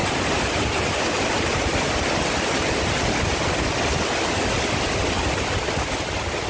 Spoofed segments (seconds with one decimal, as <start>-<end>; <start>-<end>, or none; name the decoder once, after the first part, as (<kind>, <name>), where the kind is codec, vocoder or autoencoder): none